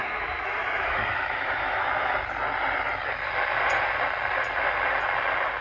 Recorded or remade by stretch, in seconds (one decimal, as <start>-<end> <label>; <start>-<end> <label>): 0.0-2.1 remade; 2.1-5.6 recorded